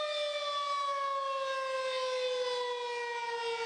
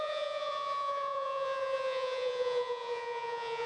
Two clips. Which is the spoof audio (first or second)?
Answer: second